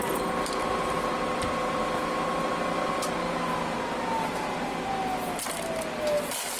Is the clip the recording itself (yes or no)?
yes